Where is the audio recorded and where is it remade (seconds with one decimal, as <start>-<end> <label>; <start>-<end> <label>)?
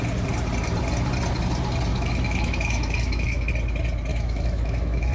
0.0-1.9 recorded; 1.9-3.5 remade; 3.5-4.1 recorded; 4.1-5.1 remade